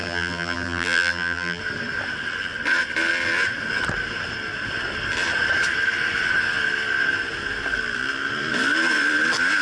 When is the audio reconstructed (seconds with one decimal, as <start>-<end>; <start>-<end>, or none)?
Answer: 0.0-1.6